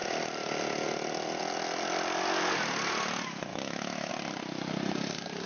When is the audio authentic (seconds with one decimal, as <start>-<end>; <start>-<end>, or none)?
0.0-3.5; 4.1-5.5